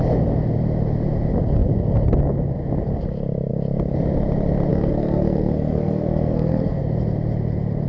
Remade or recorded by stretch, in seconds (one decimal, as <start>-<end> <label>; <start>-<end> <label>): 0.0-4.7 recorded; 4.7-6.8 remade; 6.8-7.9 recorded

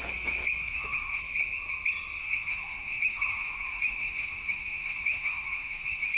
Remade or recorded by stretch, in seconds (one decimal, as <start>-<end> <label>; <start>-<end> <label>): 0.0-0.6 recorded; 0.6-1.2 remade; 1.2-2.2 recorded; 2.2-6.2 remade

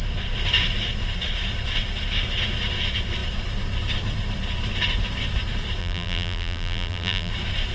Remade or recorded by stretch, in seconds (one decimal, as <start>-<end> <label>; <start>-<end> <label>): 0.0-5.8 recorded; 5.8-7.3 remade; 7.3-7.7 recorded

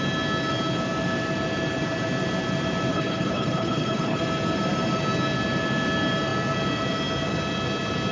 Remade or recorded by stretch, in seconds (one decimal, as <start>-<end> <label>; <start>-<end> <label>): 0.0-2.9 recorded; 2.9-4.2 remade; 4.2-8.1 recorded